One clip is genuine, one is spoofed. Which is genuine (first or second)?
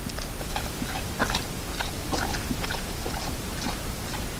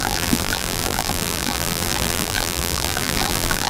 first